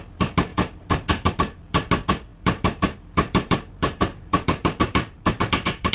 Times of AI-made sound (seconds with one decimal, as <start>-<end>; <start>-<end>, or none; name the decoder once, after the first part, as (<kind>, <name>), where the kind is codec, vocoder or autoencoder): 0.5-1.9 (vocoder, BigVGAN v2); 2.3-5.9